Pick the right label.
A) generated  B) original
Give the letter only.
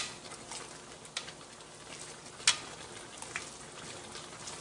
B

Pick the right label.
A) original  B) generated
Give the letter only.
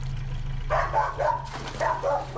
A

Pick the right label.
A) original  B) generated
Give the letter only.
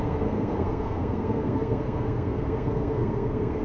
B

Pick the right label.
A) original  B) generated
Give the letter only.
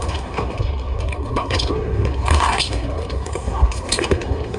B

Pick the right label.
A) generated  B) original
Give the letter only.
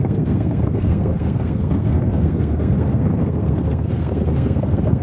A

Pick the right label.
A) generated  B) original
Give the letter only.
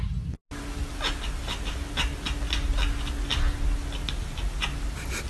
B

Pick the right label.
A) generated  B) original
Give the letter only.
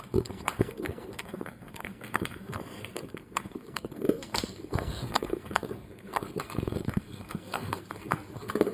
A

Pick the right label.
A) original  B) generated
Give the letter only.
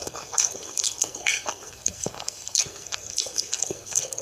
B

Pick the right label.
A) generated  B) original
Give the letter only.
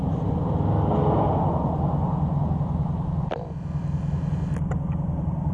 B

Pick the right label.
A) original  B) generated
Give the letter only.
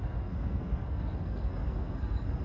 B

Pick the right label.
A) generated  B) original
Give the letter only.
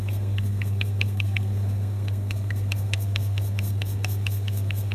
A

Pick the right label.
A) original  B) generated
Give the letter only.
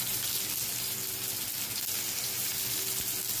A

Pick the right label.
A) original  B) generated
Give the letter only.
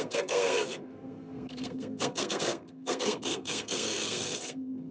B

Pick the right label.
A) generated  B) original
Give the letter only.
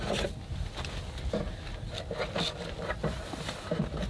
B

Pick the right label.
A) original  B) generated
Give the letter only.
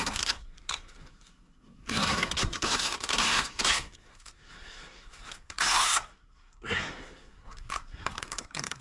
B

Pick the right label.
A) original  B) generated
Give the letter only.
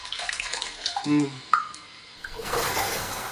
B